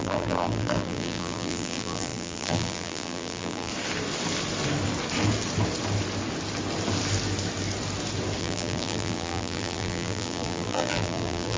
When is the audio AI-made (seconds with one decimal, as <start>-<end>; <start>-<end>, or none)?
0.0-3.7; 8.4-11.6